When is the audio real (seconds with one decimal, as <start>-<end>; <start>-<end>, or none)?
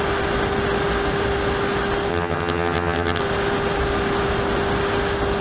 0.0-2.1; 3.2-5.4